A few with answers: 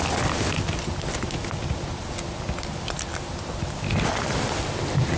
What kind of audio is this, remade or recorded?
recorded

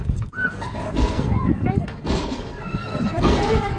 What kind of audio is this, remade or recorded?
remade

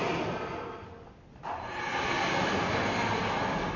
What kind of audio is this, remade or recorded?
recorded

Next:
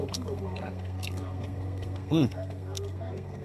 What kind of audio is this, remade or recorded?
remade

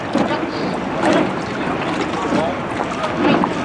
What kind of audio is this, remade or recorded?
recorded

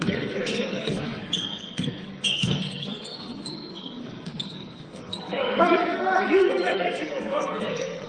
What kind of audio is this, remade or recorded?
remade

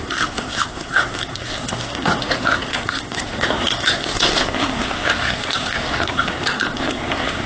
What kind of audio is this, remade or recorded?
remade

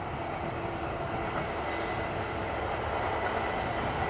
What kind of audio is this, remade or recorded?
recorded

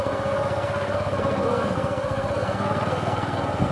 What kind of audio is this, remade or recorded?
remade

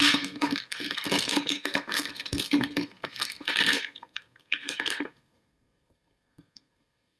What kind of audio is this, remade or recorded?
remade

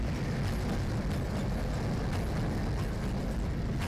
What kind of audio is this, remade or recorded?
recorded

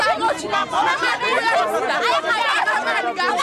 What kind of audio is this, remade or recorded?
recorded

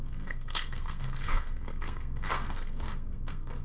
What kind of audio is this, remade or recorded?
remade